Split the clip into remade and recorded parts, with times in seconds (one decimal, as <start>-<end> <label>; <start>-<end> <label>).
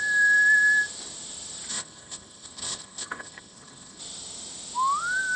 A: 0.0-1.7 recorded; 1.7-4.0 remade; 4.0-5.4 recorded